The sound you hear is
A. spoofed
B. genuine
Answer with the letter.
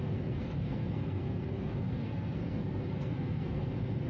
A